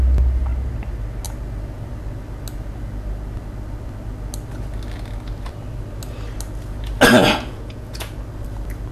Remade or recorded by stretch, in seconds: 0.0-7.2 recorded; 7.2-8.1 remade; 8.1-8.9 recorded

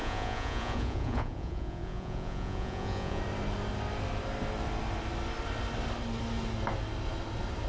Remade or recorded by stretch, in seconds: 0.0-3.2 remade; 3.2-7.7 recorded

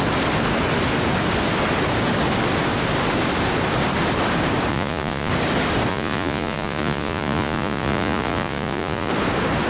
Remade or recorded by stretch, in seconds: 0.0-4.7 recorded; 4.7-5.3 remade; 5.3-5.9 recorded; 5.9-9.1 remade; 9.1-9.7 recorded

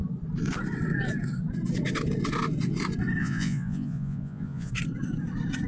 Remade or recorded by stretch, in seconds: 0.0-3.2 recorded; 3.2-4.7 remade; 4.7-5.7 recorded

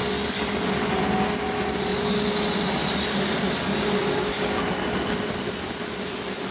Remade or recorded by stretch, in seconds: 0.0-6.5 recorded

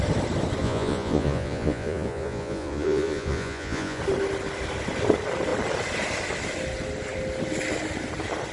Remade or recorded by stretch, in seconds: 0.0-0.6 recorded; 0.6-4.0 remade; 4.0-8.5 recorded

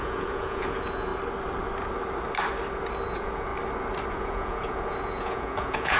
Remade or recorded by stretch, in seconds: 0.0-1.1 remade; 1.1-3.1 recorded; 3.1-3.5 remade; 3.5-4.1 recorded; 4.1-6.0 remade